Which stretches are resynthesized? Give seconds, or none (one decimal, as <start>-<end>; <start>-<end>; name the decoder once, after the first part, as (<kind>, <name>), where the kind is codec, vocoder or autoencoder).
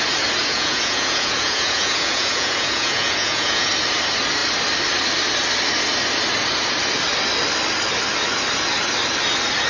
0.4-3.7 (vocoder, Vocos)